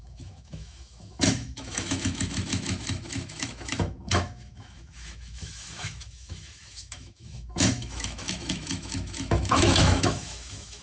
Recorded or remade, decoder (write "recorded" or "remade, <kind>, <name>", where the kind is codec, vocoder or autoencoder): remade, autoencoder, DAC-VAE